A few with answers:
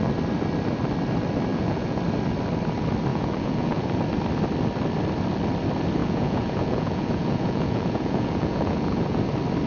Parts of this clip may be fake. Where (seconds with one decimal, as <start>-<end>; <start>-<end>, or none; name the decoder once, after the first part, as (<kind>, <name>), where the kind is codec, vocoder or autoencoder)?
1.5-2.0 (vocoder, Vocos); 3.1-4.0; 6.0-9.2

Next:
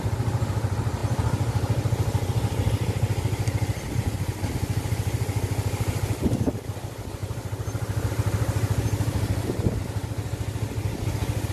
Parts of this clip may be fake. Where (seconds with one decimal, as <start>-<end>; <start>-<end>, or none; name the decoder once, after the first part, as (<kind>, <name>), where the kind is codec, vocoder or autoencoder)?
none

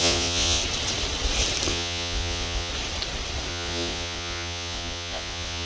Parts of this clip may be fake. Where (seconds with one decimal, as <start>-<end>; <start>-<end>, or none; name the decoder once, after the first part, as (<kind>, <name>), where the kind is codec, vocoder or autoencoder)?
0.0-0.6 (vocoder, Vocos); 1.7-2.7; 3.5-5.7